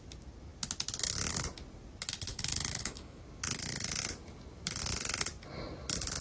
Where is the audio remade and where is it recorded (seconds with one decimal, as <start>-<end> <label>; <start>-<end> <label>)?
0.0-2.3 recorded; 2.3-3.2 remade; 3.2-6.2 recorded

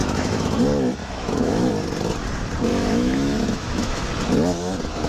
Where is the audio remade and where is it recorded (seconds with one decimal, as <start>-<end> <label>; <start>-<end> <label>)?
0.0-0.6 remade; 0.6-1.0 recorded; 1.0-1.7 remade; 1.7-2.7 recorded; 2.7-4.0 remade; 4.0-5.1 recorded

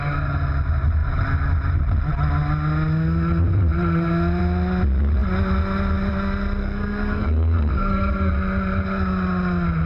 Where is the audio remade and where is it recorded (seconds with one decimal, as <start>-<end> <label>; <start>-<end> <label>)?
0.0-6.6 recorded; 6.6-8.3 remade; 8.3-9.9 recorded

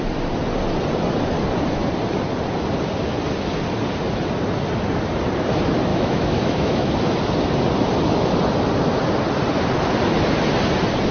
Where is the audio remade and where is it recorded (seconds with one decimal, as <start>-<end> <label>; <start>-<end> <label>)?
0.0-5.9 recorded; 5.9-6.9 remade; 6.9-11.1 recorded

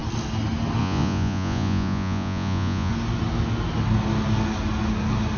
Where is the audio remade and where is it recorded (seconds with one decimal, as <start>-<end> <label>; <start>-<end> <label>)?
0.0-0.8 recorded; 0.8-2.9 remade; 2.9-5.4 recorded